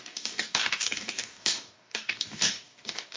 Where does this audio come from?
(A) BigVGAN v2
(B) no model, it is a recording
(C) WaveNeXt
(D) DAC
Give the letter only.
D